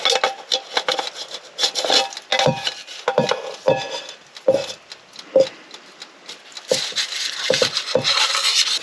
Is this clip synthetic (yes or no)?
no